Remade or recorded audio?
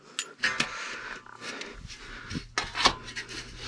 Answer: recorded